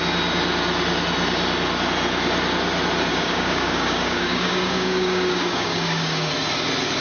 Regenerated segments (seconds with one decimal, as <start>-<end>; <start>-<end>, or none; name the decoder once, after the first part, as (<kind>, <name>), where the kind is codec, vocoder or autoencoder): 3.1-6.3 (codec, DAC)